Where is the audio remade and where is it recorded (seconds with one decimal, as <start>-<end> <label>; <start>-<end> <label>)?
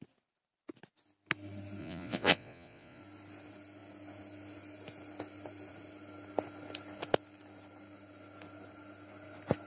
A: 0.0-1.8 recorded; 1.8-3.0 remade; 3.0-9.7 recorded